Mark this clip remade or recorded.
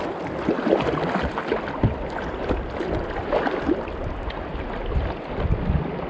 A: recorded